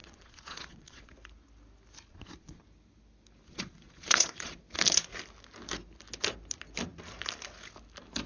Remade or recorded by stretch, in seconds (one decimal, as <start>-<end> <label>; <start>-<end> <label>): 0.0-1.1 remade; 1.1-2.1 recorded; 2.1-2.6 remade; 2.6-3.5 recorded; 3.5-4.6 remade; 4.6-8.3 recorded